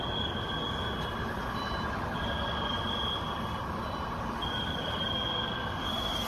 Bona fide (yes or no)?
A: yes